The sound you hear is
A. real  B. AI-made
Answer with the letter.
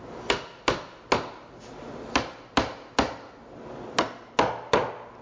A